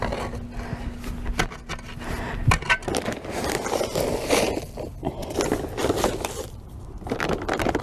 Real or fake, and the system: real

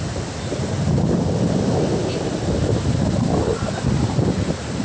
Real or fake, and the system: real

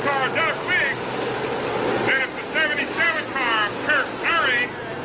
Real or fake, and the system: real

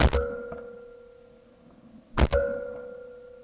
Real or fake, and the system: real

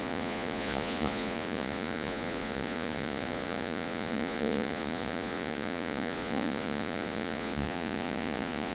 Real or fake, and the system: fake, vocoder, Vocos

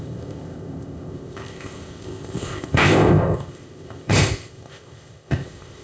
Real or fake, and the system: fake, codec, ZipCodec